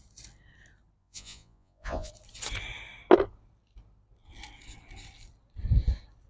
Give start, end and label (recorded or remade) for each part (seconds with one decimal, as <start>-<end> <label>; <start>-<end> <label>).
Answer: 0.0-1.0 recorded; 1.0-2.1 remade; 2.1-6.3 recorded